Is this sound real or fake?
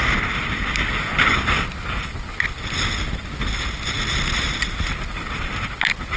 real